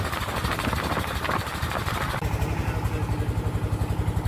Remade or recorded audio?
recorded